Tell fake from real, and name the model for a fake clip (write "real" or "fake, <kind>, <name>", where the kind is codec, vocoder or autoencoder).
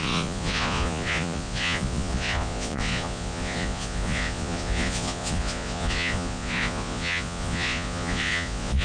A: fake, vocoder, Vocos